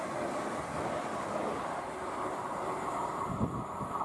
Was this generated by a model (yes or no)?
no